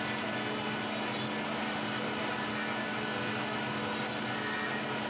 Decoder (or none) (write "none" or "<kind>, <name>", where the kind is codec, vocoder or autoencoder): none